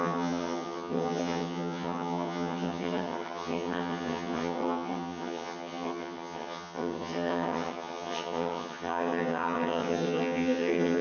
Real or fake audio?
fake